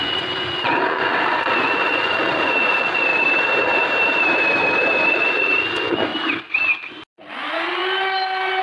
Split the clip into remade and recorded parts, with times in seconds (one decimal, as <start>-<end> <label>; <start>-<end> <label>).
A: 0.0-3.1 remade; 3.1-5.1 recorded; 5.1-6.1 remade; 6.1-7.3 recorded; 7.3-7.8 remade; 7.8-8.6 recorded